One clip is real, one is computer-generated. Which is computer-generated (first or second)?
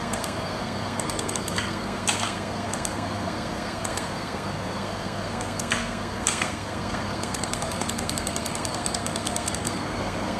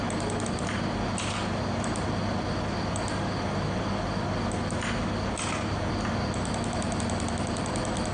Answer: first